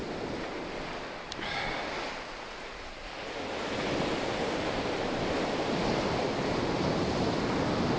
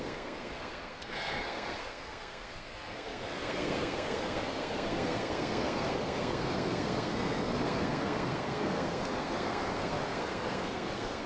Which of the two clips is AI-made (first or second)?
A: second